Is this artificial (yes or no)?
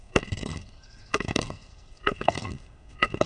yes